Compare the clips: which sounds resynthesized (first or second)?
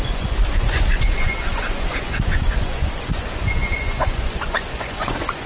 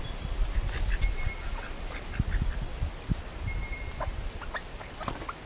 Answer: first